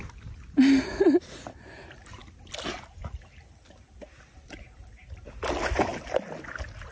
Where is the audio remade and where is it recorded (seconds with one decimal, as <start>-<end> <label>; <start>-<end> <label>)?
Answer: 0.0-6.9 recorded